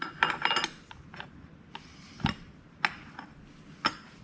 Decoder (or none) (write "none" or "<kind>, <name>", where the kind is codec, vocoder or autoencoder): none